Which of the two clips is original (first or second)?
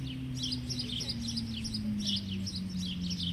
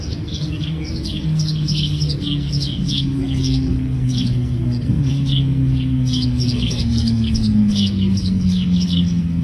first